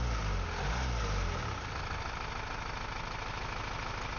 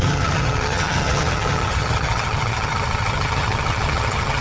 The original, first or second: first